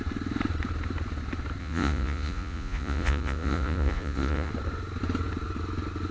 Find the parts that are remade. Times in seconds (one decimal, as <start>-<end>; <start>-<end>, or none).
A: 1.6-4.5

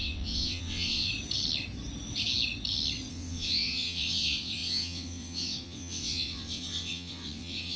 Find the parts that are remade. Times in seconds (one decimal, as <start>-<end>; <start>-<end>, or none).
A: 0.0-1.1; 3.1-7.8

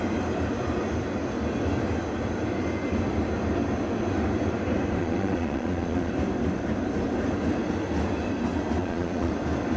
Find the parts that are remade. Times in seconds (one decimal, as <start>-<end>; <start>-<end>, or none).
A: 5.0-6.1; 8.8-9.3

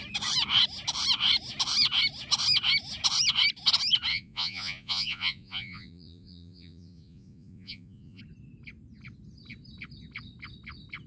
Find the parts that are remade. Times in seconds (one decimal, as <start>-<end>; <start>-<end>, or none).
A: 4.1-8.2

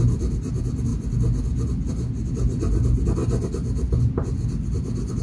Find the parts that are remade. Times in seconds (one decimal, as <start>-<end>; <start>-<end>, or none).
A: none

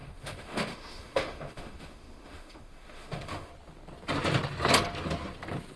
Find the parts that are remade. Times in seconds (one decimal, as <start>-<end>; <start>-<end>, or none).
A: 0.0-3.5

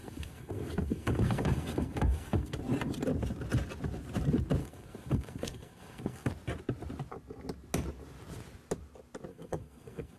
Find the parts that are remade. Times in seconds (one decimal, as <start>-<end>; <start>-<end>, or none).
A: 0.0-2.6; 4.6-6.3; 9.3-10.2

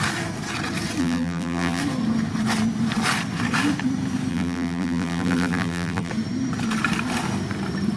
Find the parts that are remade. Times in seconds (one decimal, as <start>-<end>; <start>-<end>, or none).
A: 1.0-1.8; 4.3-6.1